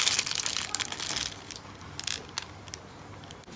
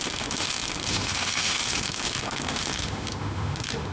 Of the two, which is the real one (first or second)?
first